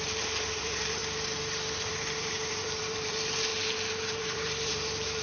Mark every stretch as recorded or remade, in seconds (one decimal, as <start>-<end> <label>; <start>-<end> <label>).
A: 0.0-1.0 remade; 1.0-1.9 recorded; 1.9-3.5 remade; 3.5-4.0 recorded; 4.0-5.2 remade